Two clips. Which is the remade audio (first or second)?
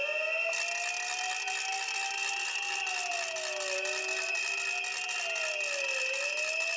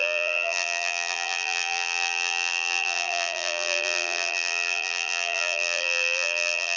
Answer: second